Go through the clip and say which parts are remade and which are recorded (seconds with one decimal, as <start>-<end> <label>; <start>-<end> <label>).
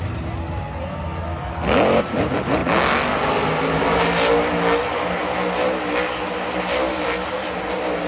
0.0-8.1 recorded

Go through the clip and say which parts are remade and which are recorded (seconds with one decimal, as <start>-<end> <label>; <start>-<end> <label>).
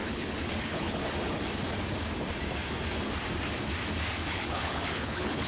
0.0-1.0 remade; 1.0-4.3 recorded; 4.3-5.5 remade